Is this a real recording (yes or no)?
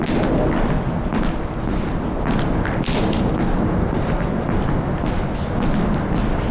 no